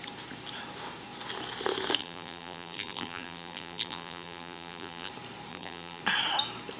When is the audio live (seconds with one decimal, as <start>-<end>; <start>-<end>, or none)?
0.0-2.0; 5.1-5.5; 6.0-6.8

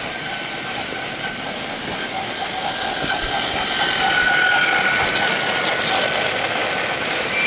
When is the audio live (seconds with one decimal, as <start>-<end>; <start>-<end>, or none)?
0.0-7.5

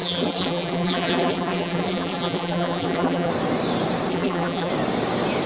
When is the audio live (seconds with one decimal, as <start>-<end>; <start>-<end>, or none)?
3.3-4.1; 4.7-5.5

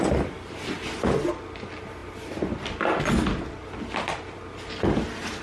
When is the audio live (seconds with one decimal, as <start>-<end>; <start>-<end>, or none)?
0.0-5.4

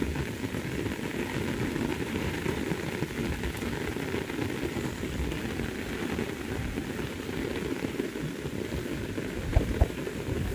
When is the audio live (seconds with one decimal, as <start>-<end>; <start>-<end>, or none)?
0.0-1.9; 2.6-9.5; 10.0-10.5

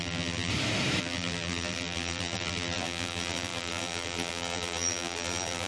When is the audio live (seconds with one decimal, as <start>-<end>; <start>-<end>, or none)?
0.5-1.0